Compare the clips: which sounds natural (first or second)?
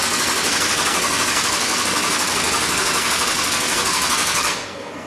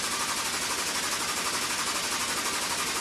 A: second